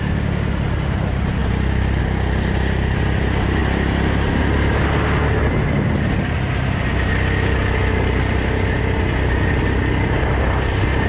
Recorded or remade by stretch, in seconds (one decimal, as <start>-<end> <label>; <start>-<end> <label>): 0.0-11.1 recorded